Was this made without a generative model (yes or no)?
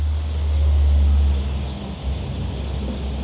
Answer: yes